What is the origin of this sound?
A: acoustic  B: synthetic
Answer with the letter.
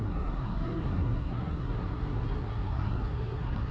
B